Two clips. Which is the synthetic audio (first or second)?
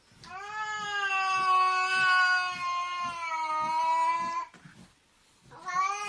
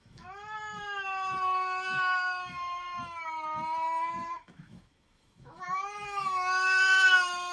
second